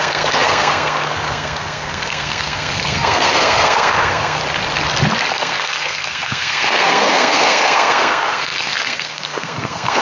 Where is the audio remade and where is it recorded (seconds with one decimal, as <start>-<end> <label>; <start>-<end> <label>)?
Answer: 0.0-4.4 remade; 4.4-5.3 recorded; 5.3-10.0 remade